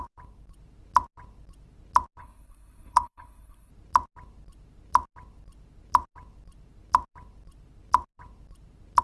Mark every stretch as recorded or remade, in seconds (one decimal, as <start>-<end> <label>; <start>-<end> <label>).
0.0-2.2 recorded; 2.2-3.7 remade; 3.7-9.0 recorded